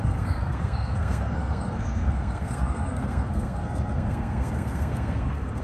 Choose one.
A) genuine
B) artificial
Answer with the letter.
B